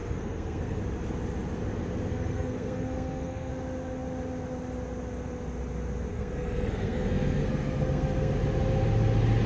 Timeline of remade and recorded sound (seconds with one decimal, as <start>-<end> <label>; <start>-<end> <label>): 0.0-0.8 remade; 0.8-2.1 recorded; 2.1-3.5 remade; 3.5-6.1 recorded; 6.1-8.3 remade; 8.3-9.5 recorded